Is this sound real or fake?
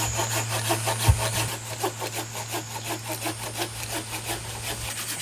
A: real